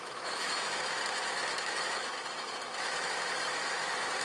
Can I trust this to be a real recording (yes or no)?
no